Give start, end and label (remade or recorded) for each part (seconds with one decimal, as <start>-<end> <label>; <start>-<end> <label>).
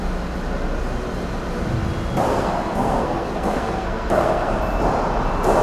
0.0-2.3 recorded; 2.3-4.6 remade; 4.6-5.6 recorded